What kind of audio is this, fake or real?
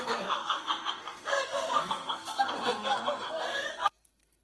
fake